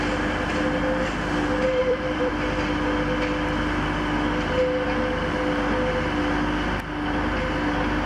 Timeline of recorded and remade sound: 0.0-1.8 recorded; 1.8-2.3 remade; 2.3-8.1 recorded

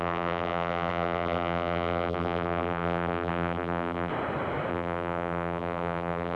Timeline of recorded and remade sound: 0.0-4.1 remade; 4.1-4.7 recorded; 4.7-6.4 remade

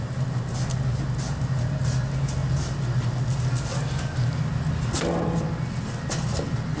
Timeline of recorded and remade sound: 0.0-6.8 recorded

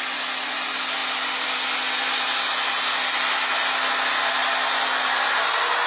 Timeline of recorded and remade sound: 0.0-5.9 recorded

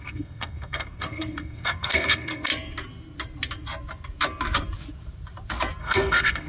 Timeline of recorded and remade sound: 0.0-2.5 remade; 2.5-5.8 recorded; 5.8-6.5 remade

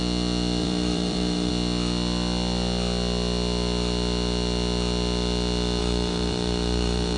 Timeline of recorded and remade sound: 0.0-0.6 recorded; 0.6-1.5 remade; 1.5-5.8 recorded; 5.8-7.2 remade

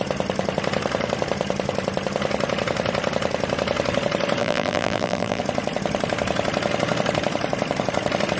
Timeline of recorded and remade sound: 0.0-4.4 recorded; 4.4-5.4 remade; 5.4-8.4 recorded

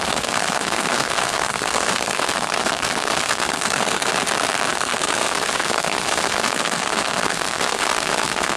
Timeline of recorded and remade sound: 0.0-4.1 remade; 4.1-4.7 recorded; 4.7-8.6 remade